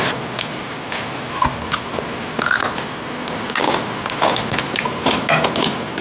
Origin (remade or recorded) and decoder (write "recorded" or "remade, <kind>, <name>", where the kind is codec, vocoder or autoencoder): recorded